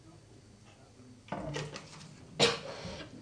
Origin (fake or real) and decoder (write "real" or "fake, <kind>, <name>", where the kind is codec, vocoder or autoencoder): real